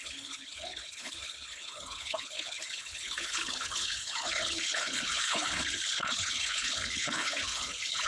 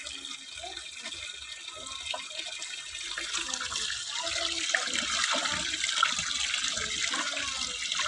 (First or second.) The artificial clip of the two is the first